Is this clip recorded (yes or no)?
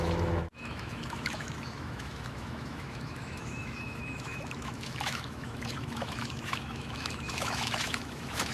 no